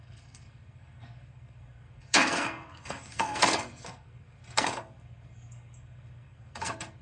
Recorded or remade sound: remade